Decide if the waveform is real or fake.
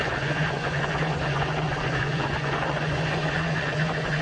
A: fake